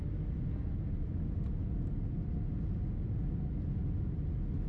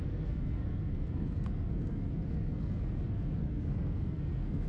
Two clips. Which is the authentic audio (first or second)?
first